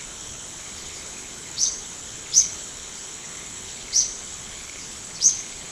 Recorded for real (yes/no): no